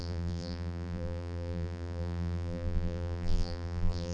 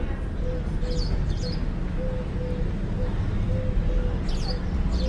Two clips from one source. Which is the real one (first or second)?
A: second